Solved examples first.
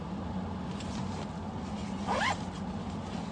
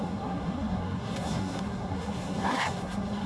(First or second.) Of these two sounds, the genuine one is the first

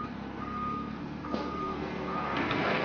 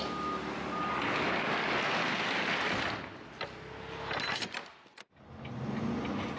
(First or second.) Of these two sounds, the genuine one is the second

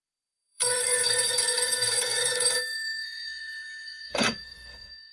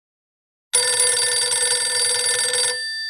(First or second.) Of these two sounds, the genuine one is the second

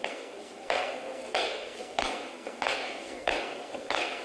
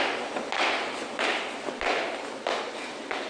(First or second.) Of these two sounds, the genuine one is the second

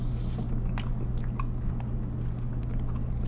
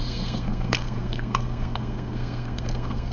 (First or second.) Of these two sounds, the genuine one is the first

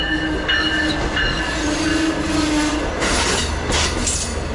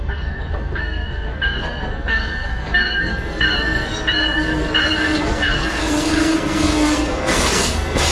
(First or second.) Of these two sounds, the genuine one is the first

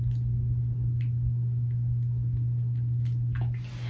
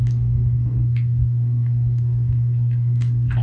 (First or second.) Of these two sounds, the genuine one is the first